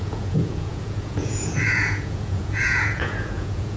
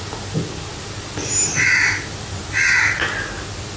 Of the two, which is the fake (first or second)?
first